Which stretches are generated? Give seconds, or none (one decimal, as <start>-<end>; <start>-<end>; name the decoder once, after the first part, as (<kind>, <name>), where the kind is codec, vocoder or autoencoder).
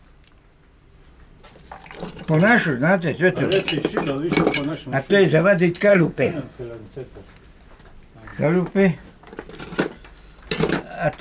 5.9-6.6 (codec, SNAC)